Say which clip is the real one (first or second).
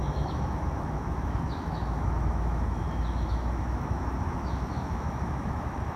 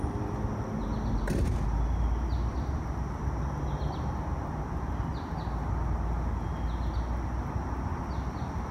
second